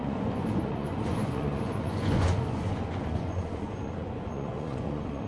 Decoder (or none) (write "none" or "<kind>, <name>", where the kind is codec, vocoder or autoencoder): vocoder, Vocos